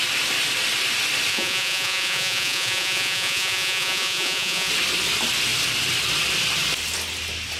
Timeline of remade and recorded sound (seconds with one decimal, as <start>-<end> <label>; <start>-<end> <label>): 0.0-1.3 recorded; 1.3-4.7 remade; 4.7-7.6 recorded